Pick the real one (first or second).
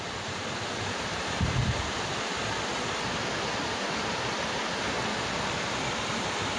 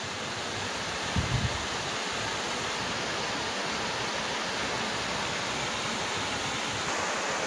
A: second